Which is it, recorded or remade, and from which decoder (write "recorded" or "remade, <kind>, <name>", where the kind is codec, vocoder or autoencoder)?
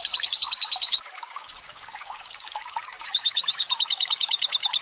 remade, codec, DAC